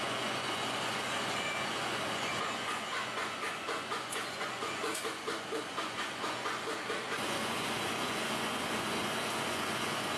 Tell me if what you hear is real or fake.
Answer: fake